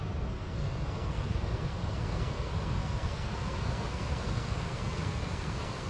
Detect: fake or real fake